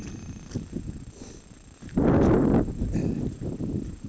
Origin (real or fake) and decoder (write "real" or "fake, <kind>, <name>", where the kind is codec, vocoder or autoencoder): real